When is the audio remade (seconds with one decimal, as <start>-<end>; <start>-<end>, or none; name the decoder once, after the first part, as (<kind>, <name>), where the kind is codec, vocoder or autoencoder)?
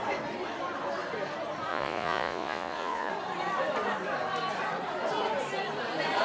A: 1.7-3.1 (vocoder, Vocos)